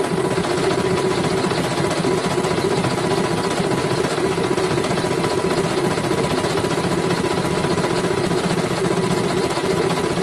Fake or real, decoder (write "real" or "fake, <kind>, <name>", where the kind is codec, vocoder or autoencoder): real